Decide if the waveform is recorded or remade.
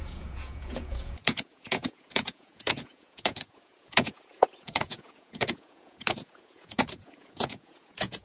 remade